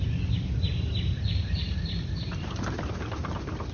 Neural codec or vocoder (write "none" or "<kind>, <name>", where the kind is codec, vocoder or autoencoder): none